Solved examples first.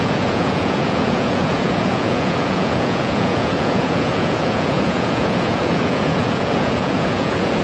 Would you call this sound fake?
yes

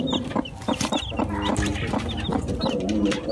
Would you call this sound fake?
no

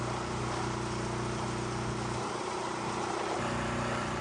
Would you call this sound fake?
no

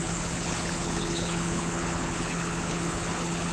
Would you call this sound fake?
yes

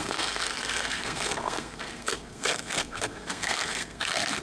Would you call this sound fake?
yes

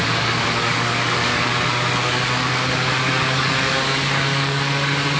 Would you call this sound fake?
yes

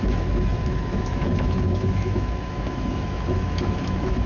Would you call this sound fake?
yes